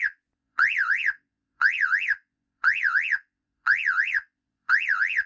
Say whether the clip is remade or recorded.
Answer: remade